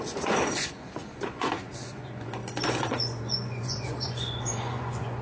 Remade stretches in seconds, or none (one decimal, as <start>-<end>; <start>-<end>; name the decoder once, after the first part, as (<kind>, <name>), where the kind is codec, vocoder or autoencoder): 0.0-5.2 (vocoder, Vocos)